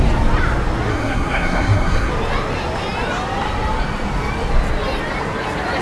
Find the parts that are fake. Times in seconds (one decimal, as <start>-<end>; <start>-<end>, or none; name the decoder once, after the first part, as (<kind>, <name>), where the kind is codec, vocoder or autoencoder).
0.9-2.1 (codec, SNAC)